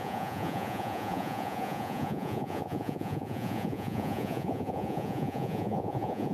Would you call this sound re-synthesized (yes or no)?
yes